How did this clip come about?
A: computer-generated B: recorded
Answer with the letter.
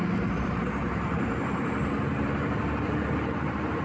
B